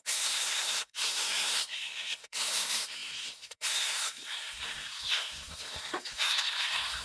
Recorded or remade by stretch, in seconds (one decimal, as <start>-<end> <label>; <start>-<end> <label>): 0.0-7.0 remade